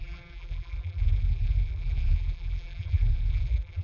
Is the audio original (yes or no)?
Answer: no